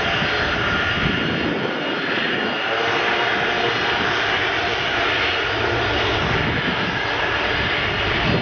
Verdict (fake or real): real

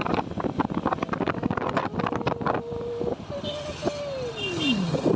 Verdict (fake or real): real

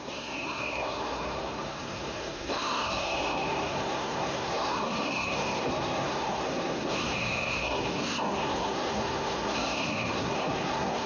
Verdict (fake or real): fake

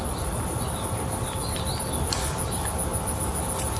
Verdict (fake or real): real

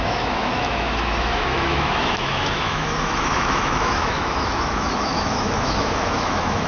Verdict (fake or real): fake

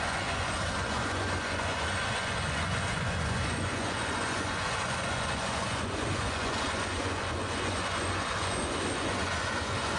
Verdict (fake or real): fake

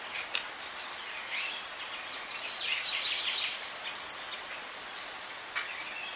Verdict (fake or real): real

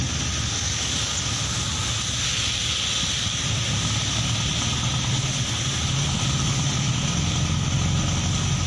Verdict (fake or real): real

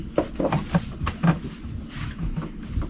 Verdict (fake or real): real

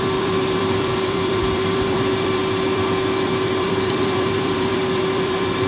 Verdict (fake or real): fake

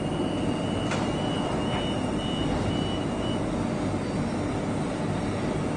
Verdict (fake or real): real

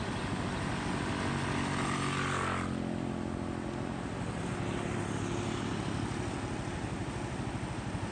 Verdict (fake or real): real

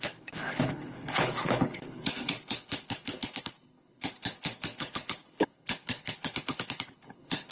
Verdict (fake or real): fake